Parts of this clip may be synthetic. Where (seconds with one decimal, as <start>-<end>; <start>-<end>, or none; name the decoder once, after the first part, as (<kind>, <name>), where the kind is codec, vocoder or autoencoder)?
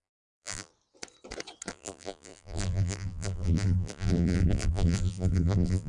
0.0-0.7 (vocoder, BigVGAN v2); 1.7-5.9